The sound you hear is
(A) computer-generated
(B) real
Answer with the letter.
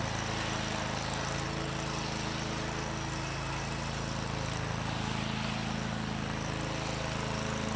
B